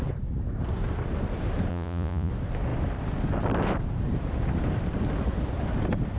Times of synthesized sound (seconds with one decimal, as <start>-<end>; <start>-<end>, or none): 1.7-2.3